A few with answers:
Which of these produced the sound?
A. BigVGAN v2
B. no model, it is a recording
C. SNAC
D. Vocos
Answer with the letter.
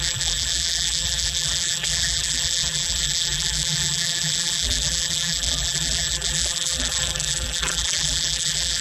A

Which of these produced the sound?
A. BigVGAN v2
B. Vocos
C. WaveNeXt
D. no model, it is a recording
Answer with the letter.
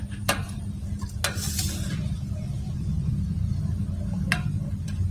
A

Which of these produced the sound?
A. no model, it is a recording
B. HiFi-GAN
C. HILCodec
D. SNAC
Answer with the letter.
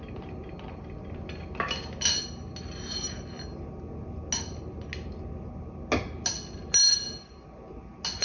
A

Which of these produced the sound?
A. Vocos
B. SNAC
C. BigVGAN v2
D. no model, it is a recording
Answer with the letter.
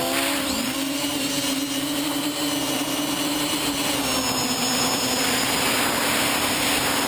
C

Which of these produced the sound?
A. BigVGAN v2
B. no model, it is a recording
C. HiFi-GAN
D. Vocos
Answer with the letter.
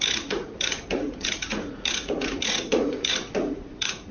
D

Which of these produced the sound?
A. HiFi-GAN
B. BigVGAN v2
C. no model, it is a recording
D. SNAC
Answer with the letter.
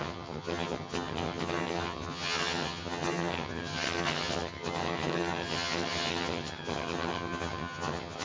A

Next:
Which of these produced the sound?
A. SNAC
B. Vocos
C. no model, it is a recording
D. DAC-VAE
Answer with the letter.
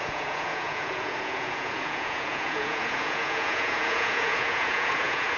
B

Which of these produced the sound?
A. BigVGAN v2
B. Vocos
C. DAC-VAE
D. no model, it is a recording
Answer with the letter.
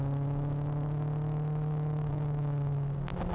C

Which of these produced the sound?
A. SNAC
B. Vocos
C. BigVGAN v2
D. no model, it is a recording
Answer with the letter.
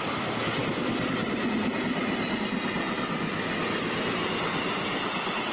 D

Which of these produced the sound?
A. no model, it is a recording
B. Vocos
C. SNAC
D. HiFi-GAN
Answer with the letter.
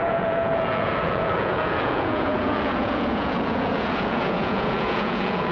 B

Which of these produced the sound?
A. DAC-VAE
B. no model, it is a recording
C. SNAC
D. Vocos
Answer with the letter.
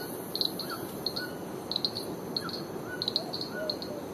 B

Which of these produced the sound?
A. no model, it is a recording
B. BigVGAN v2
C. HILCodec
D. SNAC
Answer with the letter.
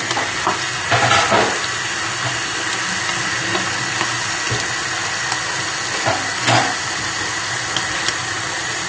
A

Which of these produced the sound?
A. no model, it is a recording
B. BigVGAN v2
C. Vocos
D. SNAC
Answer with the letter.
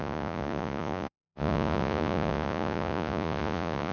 C